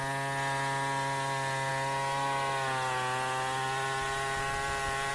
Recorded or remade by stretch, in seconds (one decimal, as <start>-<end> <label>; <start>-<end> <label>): 0.0-5.1 recorded